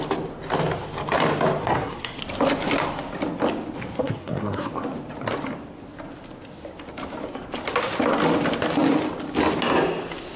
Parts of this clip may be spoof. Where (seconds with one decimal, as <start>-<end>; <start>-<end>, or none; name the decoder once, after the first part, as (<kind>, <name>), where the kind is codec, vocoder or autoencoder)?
1.6-2.2 (codec, SNAC); 4.0-4.7